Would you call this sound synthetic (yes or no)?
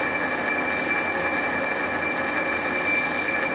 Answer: no